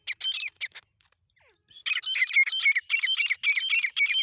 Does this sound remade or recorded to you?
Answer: recorded